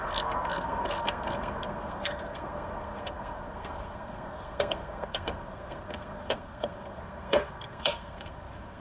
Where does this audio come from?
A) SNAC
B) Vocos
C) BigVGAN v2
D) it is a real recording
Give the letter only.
A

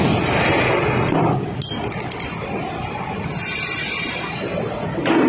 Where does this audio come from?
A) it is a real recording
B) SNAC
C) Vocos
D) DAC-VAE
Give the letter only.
A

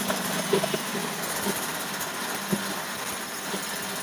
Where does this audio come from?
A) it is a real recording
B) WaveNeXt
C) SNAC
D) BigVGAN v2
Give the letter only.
A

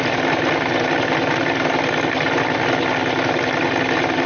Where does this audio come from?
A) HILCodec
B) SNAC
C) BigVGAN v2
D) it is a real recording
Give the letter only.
D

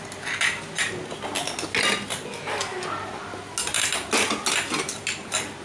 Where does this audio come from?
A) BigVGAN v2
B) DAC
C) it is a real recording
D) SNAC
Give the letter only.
C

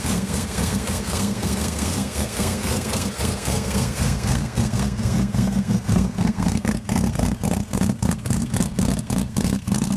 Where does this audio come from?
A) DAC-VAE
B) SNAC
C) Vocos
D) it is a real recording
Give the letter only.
B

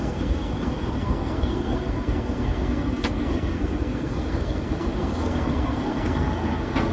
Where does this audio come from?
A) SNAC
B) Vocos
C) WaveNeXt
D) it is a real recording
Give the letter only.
A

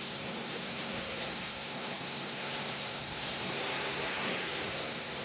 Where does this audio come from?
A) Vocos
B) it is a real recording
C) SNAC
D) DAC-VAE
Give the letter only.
C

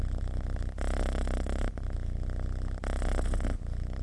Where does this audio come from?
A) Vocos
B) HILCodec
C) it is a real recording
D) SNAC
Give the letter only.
C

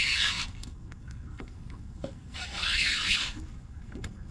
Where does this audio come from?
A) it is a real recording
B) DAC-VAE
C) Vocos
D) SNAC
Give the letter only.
D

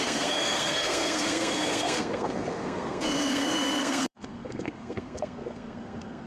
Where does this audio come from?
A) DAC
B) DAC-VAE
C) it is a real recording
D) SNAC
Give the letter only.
D